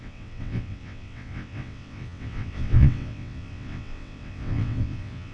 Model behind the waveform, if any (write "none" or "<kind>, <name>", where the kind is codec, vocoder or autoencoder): vocoder, WaveNeXt